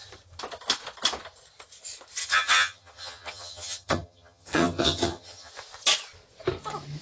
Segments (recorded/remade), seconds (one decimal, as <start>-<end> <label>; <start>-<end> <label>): 0.0-2.2 recorded; 2.2-5.5 remade; 5.5-7.0 recorded